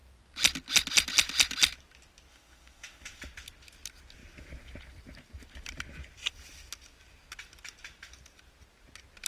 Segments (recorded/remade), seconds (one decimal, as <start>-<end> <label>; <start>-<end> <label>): 0.0-2.3 recorded; 2.3-3.2 remade; 3.2-9.3 recorded